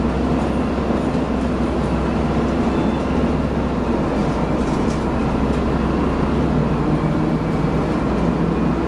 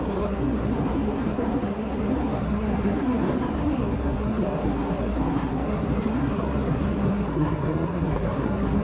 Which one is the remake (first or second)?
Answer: second